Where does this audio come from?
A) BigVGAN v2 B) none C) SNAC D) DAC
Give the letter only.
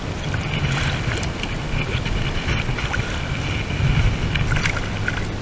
B